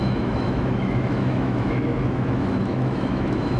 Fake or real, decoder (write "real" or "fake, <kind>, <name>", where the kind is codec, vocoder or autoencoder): fake, autoencoder, DAC-VAE